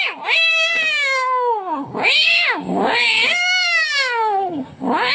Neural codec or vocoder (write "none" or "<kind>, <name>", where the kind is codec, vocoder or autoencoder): codec, DAC